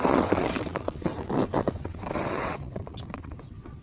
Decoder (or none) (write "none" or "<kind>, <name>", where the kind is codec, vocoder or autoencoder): vocoder, WaveNeXt